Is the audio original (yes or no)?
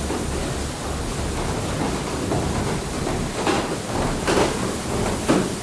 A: yes